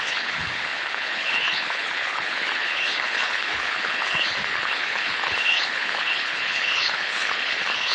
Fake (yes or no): yes